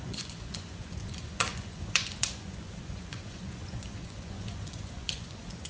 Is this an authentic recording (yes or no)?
no